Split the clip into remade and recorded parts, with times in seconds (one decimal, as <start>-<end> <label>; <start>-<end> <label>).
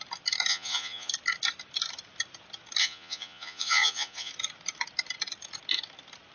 0.0-0.5 recorded; 0.5-1.1 remade; 1.1-2.8 recorded; 2.8-4.3 remade; 4.3-6.3 recorded